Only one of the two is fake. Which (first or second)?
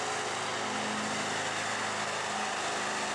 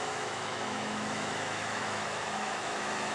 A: second